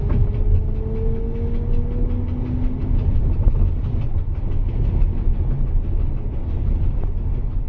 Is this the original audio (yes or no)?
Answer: yes